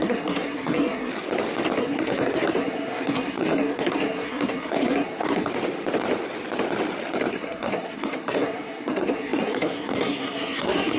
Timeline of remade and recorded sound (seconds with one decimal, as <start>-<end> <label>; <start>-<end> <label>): 0.0-1.1 remade; 1.1-1.8 recorded; 1.8-5.5 remade; 5.5-7.3 recorded; 7.3-11.0 remade